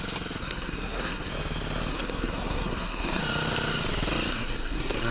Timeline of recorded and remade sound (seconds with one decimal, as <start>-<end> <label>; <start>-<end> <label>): 0.0-0.4 recorded; 0.4-1.3 remade; 1.3-1.9 recorded; 1.9-3.2 remade; 3.2-4.3 recorded; 4.3-5.1 remade